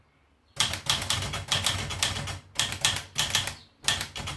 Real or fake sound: real